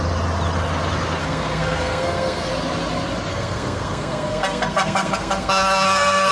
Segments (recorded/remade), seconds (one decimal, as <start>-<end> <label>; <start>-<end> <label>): 0.0-1.2 recorded; 1.2-2.5 remade; 2.5-3.3 recorded; 3.3-6.3 remade